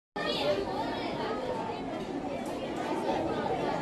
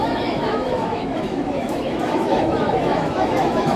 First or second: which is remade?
second